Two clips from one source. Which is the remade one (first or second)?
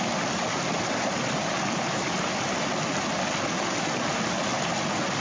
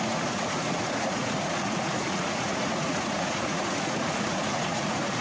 second